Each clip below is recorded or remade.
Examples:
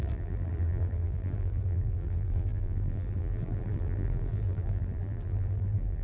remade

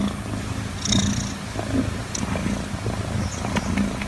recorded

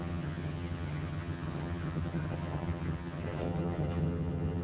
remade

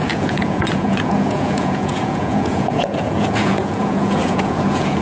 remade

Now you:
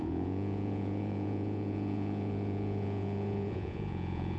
remade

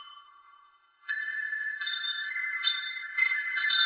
remade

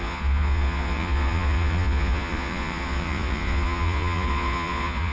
remade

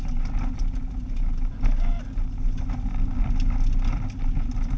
recorded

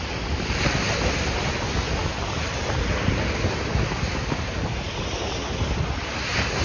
recorded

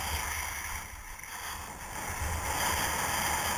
recorded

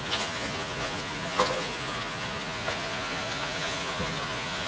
remade